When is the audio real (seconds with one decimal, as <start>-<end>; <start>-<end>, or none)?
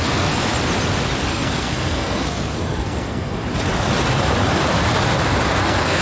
0.5-1.3; 3.4-5.6